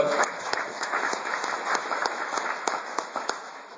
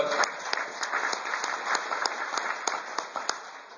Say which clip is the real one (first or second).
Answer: second